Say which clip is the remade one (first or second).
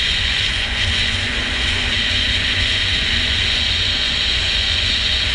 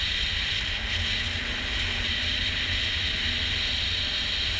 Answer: first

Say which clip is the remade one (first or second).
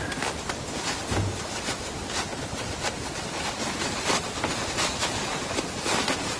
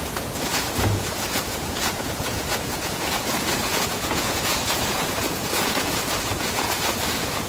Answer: second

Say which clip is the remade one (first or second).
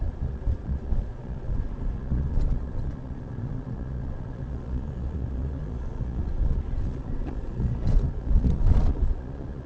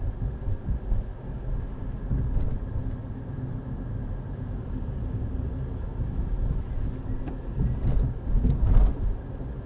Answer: first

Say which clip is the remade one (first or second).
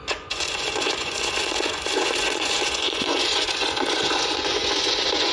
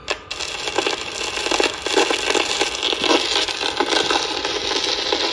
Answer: first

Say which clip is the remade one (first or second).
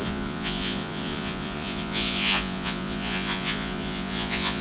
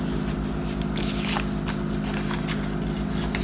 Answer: first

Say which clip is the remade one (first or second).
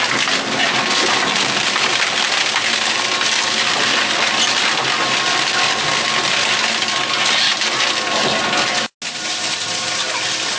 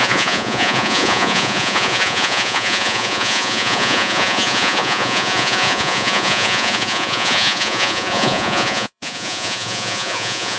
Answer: second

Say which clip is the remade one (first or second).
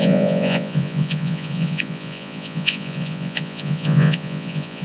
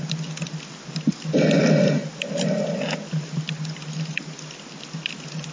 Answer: first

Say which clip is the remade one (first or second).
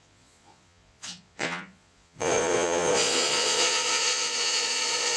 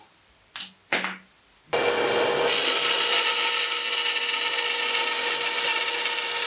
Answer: first